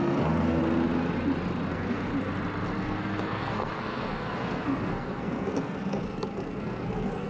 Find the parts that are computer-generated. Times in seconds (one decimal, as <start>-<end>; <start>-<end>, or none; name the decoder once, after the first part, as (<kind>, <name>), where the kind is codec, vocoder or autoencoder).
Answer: 0.0-0.6 (codec, SNAC); 1.7-2.1; 2.8-7.3